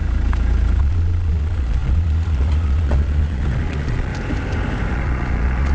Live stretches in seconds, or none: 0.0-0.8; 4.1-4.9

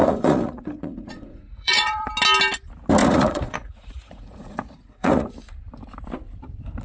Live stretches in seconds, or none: 2.1-3.0; 5.3-6.8

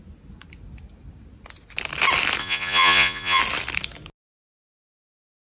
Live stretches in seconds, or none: 0.0-2.4; 3.4-5.5